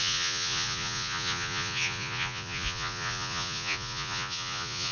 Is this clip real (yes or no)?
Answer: no